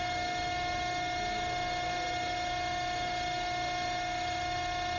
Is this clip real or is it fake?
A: fake